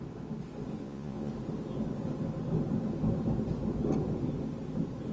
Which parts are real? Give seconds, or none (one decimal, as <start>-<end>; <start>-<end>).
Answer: 0.0-0.8; 1.3-5.1